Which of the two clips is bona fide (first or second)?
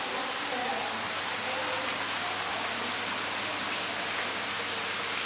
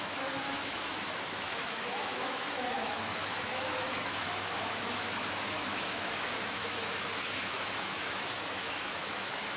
first